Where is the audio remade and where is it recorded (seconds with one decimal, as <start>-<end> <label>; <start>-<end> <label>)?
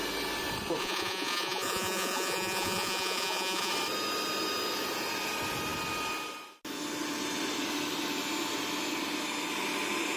0.0-0.8 recorded; 0.8-3.7 remade; 3.7-10.2 recorded